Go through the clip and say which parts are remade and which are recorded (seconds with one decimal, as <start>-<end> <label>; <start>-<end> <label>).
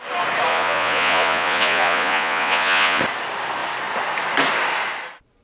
0.0-0.5 recorded; 0.5-3.0 remade; 3.0-5.4 recorded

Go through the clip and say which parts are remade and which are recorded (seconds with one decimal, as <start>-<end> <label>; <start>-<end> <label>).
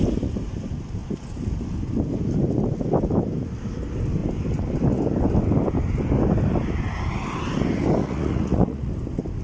0.0-8.0 recorded; 8.0-8.9 remade; 8.9-9.4 recorded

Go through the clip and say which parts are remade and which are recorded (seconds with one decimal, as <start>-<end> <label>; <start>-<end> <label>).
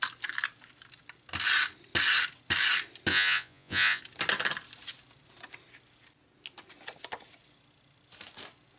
0.0-3.1 recorded; 3.1-4.0 remade; 4.0-8.8 recorded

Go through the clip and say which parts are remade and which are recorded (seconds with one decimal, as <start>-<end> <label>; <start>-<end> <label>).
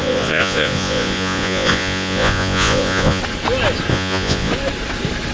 0.0-3.2 remade; 3.2-3.9 recorded; 3.9-4.5 remade; 4.5-5.3 recorded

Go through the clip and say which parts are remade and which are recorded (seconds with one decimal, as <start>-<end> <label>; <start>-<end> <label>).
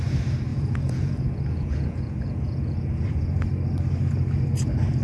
0.0-0.5 recorded; 0.5-3.4 remade; 3.4-5.0 recorded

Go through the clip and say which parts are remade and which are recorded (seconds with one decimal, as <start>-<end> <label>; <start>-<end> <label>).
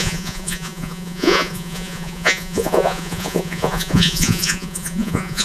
0.0-5.4 remade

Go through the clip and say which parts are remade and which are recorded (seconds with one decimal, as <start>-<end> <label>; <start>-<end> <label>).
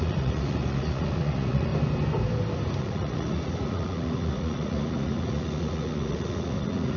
0.0-1.7 remade; 1.7-2.8 recorded; 2.8-7.0 remade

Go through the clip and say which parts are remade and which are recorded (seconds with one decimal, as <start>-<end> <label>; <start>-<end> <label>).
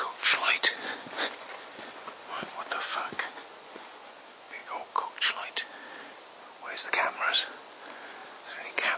0.0-4.6 remade; 4.6-6.9 recorded; 6.9-9.0 remade